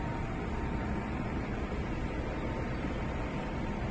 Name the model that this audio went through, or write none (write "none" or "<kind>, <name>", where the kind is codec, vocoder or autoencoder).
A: vocoder, BigVGAN v2